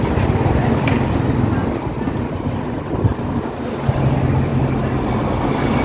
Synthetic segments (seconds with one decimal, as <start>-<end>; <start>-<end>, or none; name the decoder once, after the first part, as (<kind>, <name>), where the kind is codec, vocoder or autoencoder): none